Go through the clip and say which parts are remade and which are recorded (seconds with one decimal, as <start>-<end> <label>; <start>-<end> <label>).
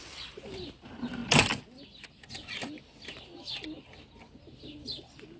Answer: 0.0-5.4 recorded